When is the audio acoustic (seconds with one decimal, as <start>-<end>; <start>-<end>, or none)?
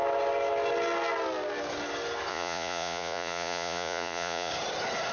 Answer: 0.0-2.3; 4.5-5.1